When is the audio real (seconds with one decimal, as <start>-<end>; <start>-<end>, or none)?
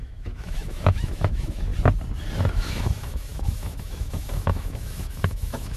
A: 1.7-2.5